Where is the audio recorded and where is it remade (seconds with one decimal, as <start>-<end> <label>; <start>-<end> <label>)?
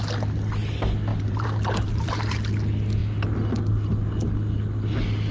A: 0.0-1.1 recorded; 1.1-2.2 remade; 2.2-5.3 recorded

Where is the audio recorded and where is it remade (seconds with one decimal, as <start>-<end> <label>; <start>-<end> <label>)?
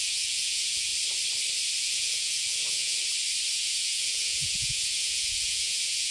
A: 0.0-0.9 remade; 0.9-1.8 recorded; 1.8-3.0 remade; 3.0-3.5 recorded; 3.5-6.1 remade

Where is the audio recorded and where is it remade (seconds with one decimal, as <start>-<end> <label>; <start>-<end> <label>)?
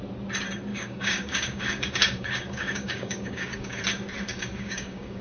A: 0.0-0.7 recorded; 0.7-3.8 remade; 3.8-4.3 recorded; 4.3-5.2 remade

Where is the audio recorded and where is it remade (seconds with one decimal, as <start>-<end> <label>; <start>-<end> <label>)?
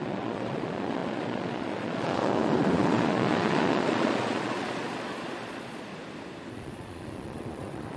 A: 0.0-5.9 remade; 5.9-6.5 recorded; 6.5-8.0 remade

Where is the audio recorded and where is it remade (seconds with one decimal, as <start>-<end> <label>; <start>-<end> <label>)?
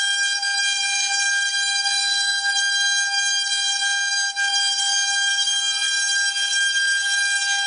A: 0.0-2.0 recorded; 2.0-2.5 remade; 2.5-7.7 recorded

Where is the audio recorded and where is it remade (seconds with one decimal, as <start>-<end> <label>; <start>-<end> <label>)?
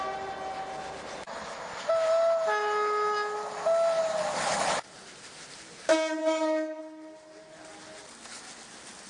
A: 0.0-6.2 recorded; 6.2-6.8 remade; 6.8-9.1 recorded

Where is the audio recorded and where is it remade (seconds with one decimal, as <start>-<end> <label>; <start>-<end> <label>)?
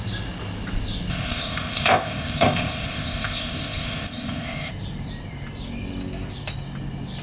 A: 0.0-1.1 recorded; 1.1-4.7 remade; 4.7-7.2 recorded